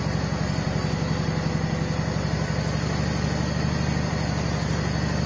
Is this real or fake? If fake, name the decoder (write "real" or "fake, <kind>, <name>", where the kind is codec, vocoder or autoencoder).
real